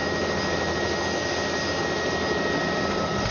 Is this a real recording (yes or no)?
yes